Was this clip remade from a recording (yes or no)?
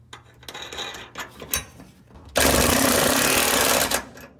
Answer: no